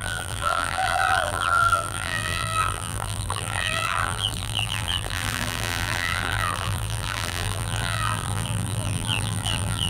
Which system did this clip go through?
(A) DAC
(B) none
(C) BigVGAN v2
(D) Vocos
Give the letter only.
C